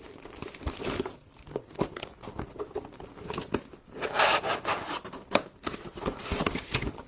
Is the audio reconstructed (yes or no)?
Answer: no